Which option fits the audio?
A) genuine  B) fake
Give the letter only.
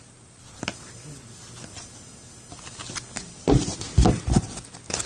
A